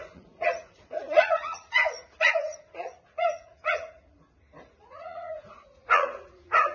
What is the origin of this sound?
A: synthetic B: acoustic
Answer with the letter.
A